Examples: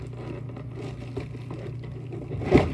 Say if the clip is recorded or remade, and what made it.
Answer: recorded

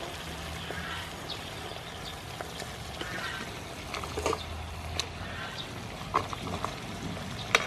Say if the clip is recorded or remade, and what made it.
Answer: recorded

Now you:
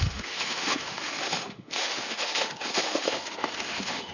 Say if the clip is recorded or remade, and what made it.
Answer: remade, autoencoder, DAC-VAE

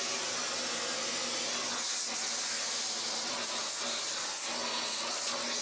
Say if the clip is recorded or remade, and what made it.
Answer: recorded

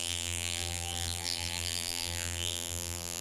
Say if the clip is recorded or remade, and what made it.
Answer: remade, vocoder, BigVGAN v2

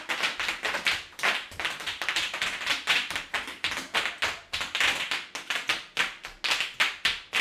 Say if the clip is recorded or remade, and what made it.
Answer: recorded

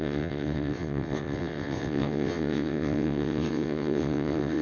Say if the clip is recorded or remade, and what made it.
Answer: remade, vocoder, WaveNeXt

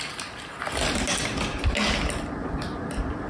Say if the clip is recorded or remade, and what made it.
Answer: recorded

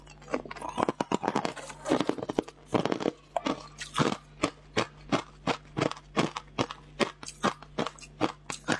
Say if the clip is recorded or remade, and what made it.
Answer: recorded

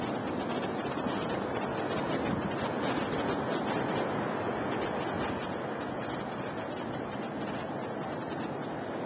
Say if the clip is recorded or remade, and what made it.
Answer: recorded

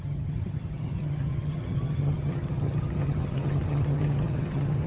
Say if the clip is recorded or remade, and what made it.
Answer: remade, vocoder, HiFi-GAN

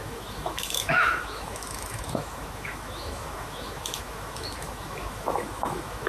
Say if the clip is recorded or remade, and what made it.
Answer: remade, autoencoder, DAC-VAE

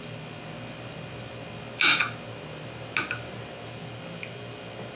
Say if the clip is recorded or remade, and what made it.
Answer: recorded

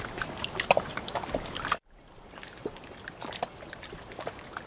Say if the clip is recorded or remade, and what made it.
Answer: recorded